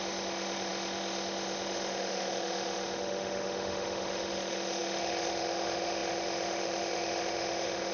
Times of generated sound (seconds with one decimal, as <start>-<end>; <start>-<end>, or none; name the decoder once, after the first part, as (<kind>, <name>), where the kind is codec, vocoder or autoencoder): 0.0-7.9 (autoencoder, DAC-VAE)